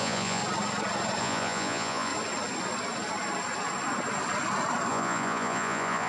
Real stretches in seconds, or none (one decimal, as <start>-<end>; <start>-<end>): 0.4-1.2; 2.1-4.9